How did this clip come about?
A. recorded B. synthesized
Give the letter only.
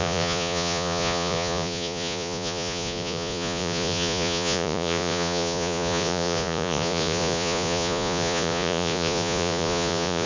B